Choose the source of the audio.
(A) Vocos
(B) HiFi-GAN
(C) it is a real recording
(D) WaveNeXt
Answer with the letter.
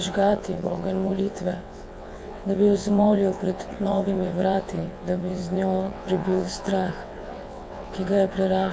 D